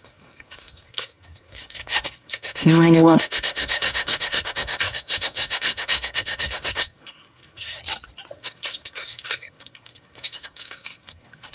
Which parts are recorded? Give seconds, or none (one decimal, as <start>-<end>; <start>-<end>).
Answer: 7.8-8.3